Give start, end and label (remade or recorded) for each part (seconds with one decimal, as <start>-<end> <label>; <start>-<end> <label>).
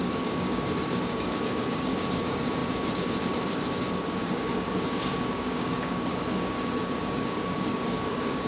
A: 0.0-8.5 remade